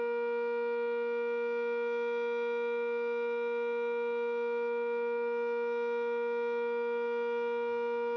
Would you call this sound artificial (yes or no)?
no